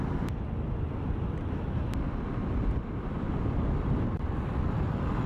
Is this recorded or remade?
recorded